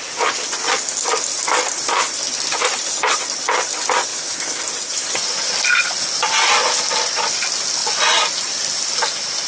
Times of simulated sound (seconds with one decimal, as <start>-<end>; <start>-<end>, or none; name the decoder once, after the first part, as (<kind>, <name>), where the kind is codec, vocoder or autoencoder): 4.1-4.6 (autoencoder, DAC-VAE)